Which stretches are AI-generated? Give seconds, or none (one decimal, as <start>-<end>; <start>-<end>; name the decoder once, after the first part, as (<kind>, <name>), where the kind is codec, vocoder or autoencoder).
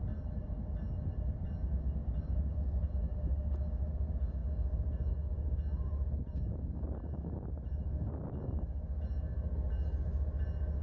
none